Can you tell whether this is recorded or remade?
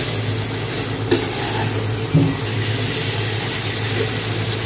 recorded